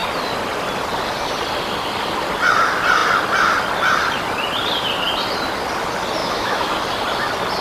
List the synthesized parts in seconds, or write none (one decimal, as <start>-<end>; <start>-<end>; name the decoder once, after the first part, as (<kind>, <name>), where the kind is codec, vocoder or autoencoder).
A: 6.2-6.7 (autoencoder, DAC-VAE)